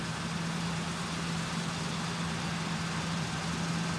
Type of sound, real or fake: real